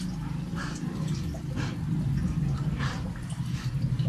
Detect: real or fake real